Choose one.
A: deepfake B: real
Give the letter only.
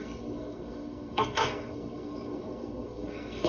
A